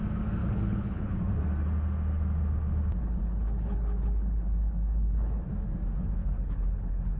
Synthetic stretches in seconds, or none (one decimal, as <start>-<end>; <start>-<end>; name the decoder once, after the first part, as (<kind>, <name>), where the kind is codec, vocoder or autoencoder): 0.4-1.2 (codec, HILCodec); 3.0-5.4; 6.2-7.2